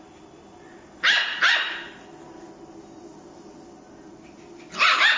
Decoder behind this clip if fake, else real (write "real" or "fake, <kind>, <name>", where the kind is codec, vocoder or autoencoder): real